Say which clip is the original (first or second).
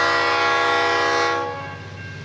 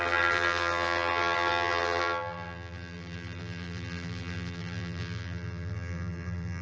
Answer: first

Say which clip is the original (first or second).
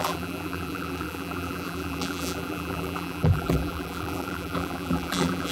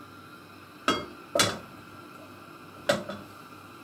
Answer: second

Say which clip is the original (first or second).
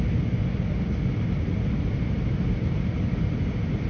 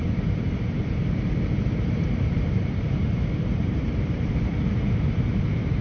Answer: first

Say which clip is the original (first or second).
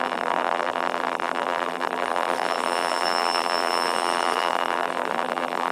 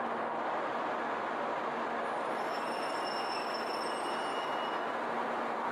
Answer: second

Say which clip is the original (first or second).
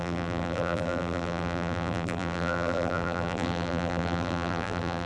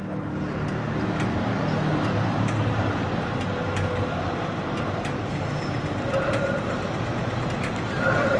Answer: second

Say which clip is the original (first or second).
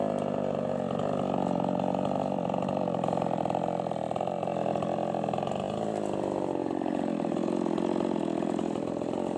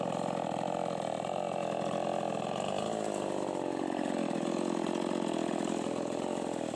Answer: second